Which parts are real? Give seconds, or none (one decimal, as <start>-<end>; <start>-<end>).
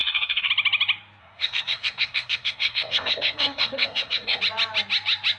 0.5-1.2; 4.4-5.4